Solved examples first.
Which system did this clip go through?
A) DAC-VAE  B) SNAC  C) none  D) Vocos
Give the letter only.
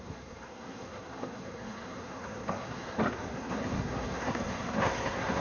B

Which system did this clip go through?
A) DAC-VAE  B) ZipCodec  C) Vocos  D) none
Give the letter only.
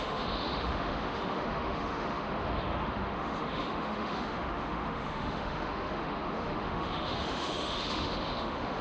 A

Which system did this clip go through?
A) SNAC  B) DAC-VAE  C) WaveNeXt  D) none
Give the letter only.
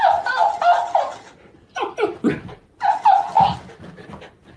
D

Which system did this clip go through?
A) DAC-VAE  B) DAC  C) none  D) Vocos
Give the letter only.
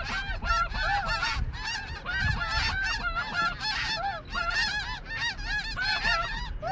C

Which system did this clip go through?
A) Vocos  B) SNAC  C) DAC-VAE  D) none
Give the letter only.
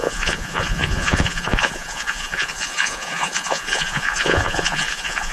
A